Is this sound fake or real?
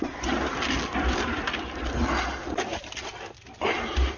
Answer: real